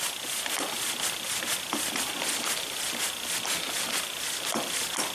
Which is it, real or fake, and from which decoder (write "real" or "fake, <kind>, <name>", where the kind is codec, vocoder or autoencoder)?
fake, vocoder, BigVGAN v2